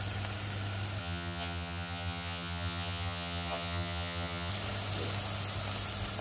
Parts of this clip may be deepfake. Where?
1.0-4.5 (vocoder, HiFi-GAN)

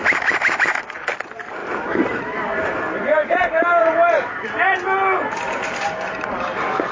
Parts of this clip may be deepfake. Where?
none